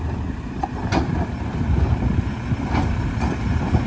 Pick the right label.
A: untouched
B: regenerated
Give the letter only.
A